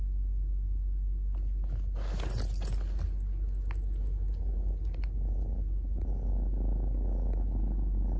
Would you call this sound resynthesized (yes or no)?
no